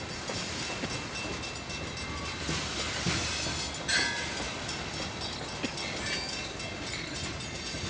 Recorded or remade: recorded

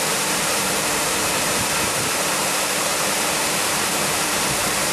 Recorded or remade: remade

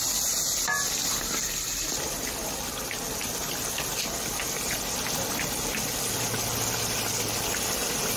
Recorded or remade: recorded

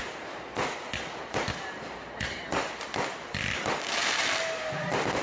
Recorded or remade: remade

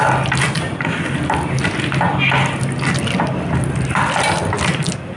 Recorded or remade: recorded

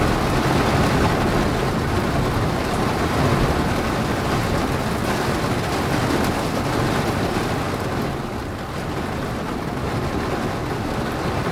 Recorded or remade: recorded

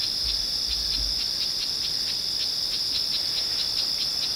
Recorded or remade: recorded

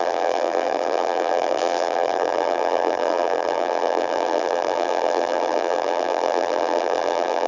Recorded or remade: remade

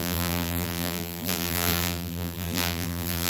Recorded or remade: remade